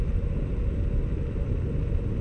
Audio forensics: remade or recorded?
recorded